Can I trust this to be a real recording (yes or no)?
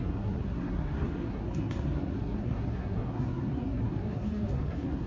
no